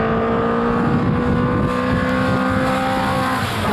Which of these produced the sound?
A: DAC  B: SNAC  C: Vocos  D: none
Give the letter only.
D